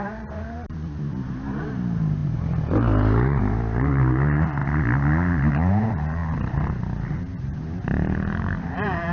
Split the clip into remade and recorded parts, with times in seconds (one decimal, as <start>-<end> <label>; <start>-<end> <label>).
0.0-4.6 remade; 4.6-5.5 recorded; 5.5-9.1 remade